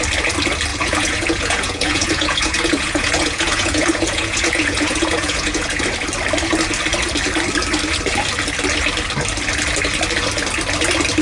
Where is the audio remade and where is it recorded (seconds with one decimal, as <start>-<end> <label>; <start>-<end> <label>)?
0.0-0.7 recorded; 0.7-5.8 remade; 5.8-11.2 recorded